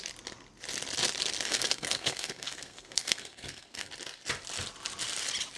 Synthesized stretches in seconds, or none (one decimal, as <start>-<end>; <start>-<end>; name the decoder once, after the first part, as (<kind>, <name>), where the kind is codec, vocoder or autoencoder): 1.5-3.9 (codec, SNAC)